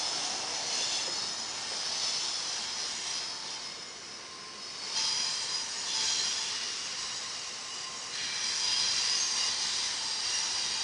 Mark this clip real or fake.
real